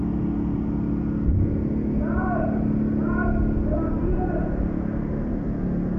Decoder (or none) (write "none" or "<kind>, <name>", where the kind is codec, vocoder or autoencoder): none